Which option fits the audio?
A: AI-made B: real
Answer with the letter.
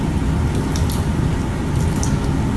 B